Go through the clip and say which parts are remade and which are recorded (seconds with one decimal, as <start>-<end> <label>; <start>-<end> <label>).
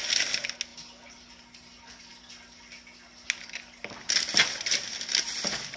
0.0-5.8 recorded